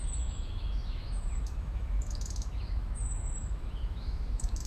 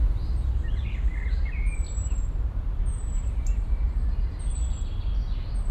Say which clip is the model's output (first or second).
first